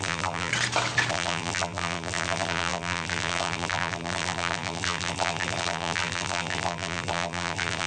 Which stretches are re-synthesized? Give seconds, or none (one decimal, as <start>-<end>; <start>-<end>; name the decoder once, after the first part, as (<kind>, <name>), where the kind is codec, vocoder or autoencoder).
0.0-0.5 (vocoder, BigVGAN v2); 1.1-7.9